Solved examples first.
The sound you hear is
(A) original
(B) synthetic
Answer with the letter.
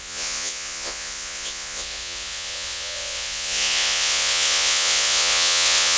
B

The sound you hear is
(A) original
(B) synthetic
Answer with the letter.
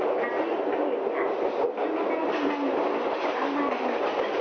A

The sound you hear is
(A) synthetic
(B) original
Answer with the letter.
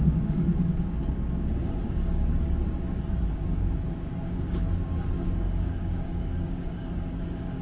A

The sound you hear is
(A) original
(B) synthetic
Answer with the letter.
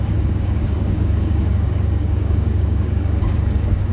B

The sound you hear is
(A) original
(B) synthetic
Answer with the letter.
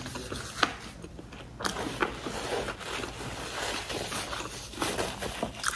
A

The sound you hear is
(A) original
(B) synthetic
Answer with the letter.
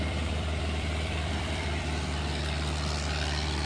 B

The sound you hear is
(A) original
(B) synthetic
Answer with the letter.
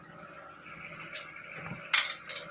A